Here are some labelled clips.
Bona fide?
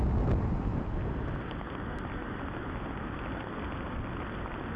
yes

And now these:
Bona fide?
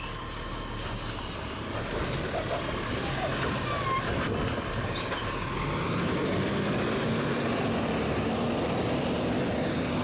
yes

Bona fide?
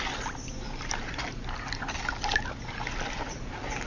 yes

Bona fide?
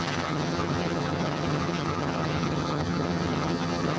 no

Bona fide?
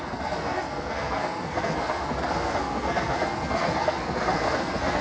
no